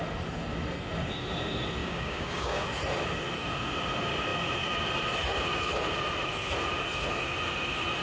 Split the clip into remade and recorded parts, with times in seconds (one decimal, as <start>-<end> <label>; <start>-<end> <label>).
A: 0.0-1.8 recorded; 1.8-2.7 remade; 2.7-8.0 recorded